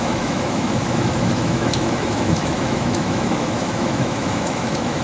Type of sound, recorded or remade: remade